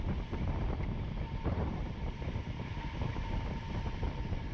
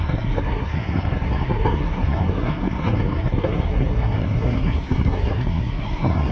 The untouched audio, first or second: first